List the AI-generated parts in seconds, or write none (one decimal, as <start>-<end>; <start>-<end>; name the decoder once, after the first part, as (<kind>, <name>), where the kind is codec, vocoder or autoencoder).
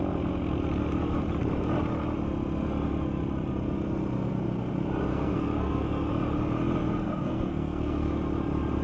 5.1-6.1 (codec, SNAC); 6.8-8.2